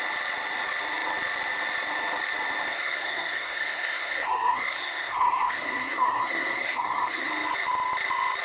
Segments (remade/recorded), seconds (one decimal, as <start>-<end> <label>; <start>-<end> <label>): 0.0-2.7 recorded; 2.7-7.3 remade; 7.3-8.4 recorded